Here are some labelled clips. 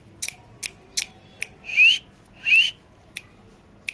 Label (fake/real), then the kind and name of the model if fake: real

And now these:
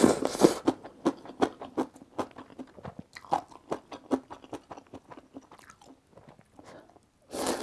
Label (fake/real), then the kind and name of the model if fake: real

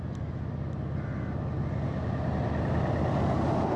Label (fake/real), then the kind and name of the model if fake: real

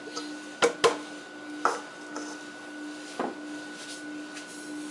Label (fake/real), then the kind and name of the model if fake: real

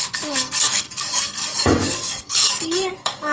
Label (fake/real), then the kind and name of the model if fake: fake, codec, SNAC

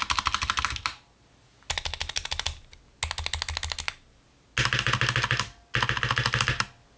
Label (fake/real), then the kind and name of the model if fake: real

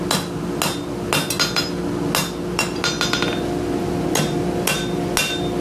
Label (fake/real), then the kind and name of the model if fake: real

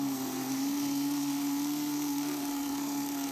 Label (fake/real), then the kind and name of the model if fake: fake, codec, SNAC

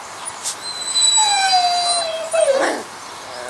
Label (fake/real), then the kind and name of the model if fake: real